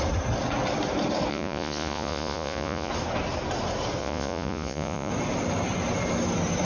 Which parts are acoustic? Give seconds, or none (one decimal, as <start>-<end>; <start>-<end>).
0.0-1.3; 2.9-4.0; 5.1-6.6